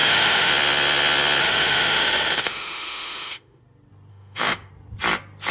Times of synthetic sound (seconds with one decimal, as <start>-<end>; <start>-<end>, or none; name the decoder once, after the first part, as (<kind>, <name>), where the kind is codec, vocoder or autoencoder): 0.0-0.5 (autoencoder, DAC-VAE); 1.4-3.6; 4.1-4.7